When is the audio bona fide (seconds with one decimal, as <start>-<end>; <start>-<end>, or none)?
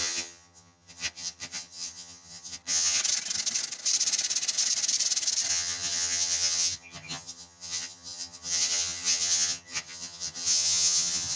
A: 3.0-5.5